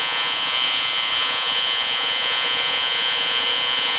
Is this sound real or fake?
fake